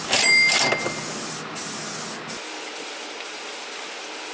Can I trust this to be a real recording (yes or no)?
yes